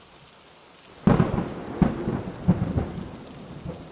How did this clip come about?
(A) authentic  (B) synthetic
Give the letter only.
A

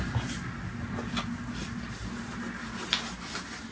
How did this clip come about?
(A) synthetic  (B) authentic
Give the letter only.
B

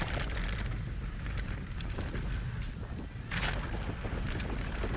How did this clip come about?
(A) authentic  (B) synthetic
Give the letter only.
A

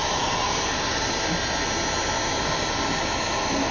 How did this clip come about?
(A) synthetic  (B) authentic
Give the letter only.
B